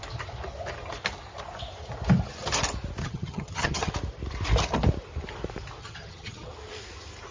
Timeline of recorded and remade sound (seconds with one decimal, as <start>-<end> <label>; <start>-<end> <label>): 0.0-3.0 recorded; 3.0-3.9 remade; 3.9-5.8 recorded; 5.8-6.5 remade; 6.5-7.3 recorded